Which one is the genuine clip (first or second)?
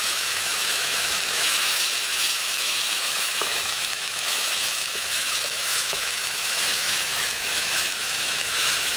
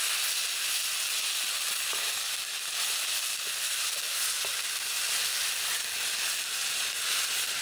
second